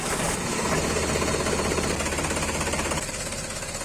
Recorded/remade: recorded